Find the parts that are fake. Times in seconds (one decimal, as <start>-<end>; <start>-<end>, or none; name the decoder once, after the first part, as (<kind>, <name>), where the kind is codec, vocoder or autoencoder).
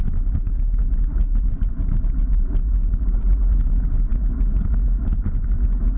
1.3-3.5 (vocoder, BigVGAN v2)